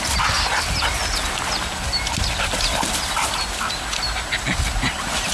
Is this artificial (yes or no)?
no